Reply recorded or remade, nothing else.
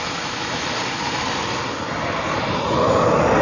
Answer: recorded